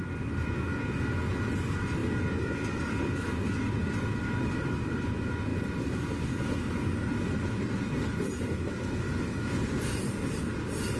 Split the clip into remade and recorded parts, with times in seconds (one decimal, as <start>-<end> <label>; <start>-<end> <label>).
0.0-11.0 recorded